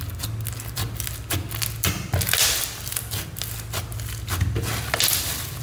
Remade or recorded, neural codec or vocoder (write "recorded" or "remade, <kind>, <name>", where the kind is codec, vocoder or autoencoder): recorded